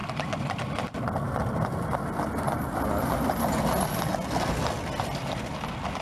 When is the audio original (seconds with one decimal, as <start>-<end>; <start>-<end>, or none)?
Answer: 0.0-6.0